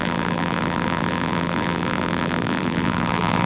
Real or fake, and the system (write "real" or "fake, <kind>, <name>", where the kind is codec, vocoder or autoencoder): fake, vocoder, BigVGAN v2